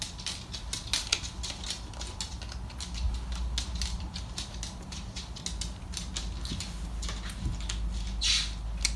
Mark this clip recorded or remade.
recorded